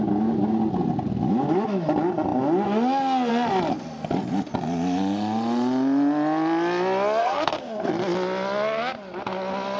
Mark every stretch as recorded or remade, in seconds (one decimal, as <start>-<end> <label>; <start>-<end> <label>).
0.0-7.2 recorded; 7.2-7.9 remade; 7.9-9.8 recorded